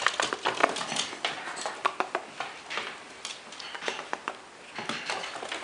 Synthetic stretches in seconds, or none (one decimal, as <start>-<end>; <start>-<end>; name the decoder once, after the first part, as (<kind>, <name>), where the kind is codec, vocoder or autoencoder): 0.6-4.0 (vocoder, BigVGAN v2)